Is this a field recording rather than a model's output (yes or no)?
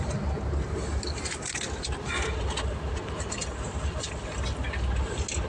yes